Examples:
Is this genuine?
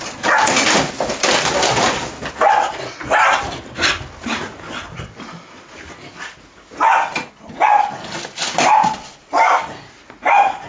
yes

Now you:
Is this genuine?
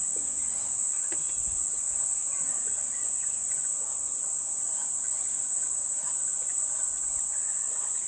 no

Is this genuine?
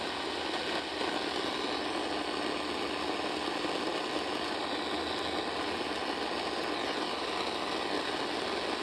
yes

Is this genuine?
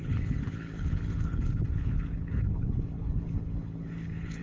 no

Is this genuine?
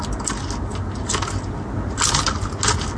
yes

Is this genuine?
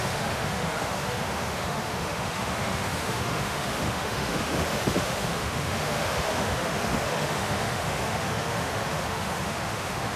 no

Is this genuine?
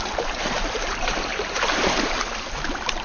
no